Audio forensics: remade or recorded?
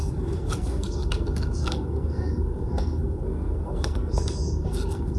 remade